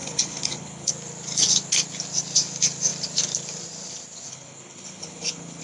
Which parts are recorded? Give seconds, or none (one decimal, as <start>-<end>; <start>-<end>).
0.9-4.3